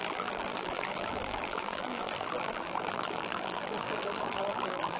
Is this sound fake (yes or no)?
yes